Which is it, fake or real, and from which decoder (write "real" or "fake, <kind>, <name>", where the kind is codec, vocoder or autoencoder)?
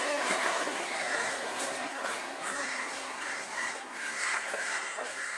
fake, codec, SNAC